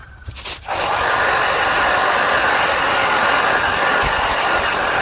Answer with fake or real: real